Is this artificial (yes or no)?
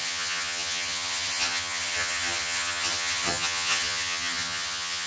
yes